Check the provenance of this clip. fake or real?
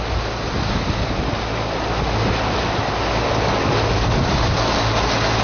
real